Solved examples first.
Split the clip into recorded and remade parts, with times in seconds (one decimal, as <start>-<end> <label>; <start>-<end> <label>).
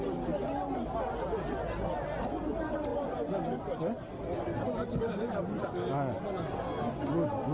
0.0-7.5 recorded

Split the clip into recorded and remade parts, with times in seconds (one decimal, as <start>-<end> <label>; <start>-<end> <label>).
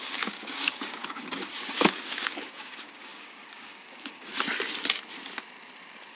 0.0-4.3 remade; 4.3-6.1 recorded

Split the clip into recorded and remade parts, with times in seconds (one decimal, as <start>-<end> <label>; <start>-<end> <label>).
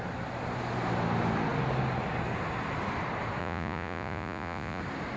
0.0-3.4 recorded; 3.4-4.8 remade; 4.8-5.2 recorded